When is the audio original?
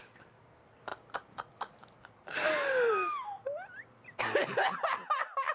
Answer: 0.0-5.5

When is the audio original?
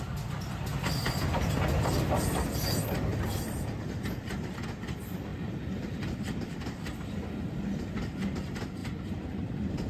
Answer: 0.0-3.1; 4.0-5.3; 7.8-8.8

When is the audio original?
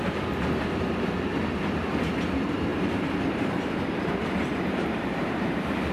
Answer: 0.0-2.7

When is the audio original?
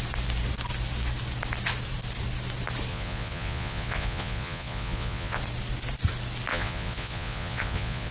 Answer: 0.0-2.9; 5.4-6.5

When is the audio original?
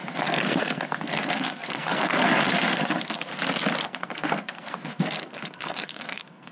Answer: 3.3-3.8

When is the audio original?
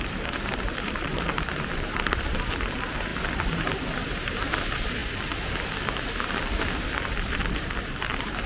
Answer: 5.0-7.1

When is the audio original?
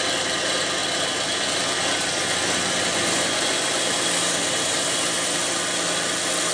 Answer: 0.0-2.9; 3.8-6.5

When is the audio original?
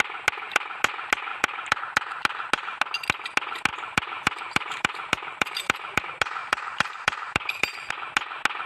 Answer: 0.0-1.3; 1.8-3.7; 6.0-6.4; 7.9-8.7